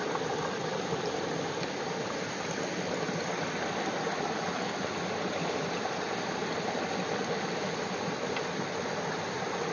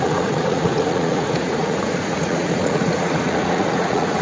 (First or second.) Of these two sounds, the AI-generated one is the second